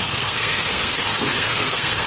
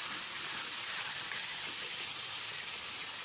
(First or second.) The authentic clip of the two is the second